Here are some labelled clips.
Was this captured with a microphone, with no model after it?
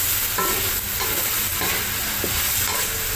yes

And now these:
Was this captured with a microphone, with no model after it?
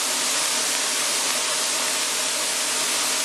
yes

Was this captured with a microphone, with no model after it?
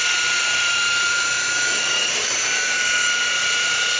no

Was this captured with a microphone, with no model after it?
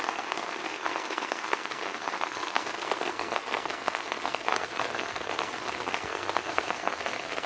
no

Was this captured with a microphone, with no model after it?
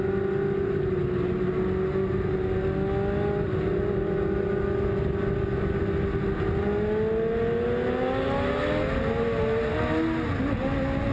yes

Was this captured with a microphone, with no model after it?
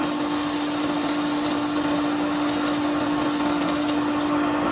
yes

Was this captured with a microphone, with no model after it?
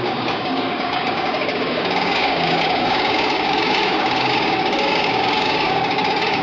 no